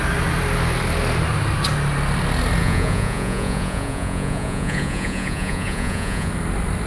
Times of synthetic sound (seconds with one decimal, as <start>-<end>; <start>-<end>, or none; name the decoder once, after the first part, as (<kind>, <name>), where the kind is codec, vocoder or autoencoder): 2.6-6.3 (vocoder, Vocos)